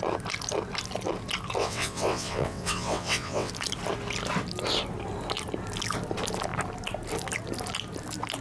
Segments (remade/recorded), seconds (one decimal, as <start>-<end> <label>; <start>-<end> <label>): 0.0-1.6 recorded; 1.6-3.5 remade; 3.5-8.4 recorded